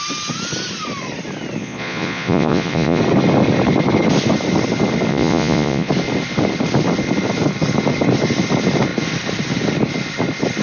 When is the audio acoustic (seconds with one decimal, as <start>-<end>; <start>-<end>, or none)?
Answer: 0.0-1.6; 3.0-5.1; 5.9-10.6